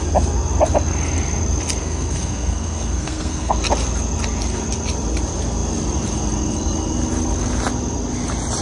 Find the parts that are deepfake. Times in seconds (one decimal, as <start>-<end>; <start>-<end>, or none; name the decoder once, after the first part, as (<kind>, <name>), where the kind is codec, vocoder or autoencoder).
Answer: 1.8-3.5 (codec, SNAC)